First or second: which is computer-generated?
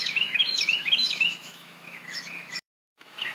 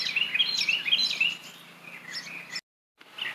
first